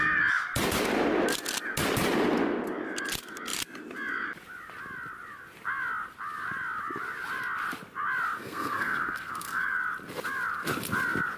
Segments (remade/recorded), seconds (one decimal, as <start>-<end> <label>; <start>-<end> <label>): 0.0-8.4 recorded; 8.4-9.8 remade; 9.8-11.4 recorded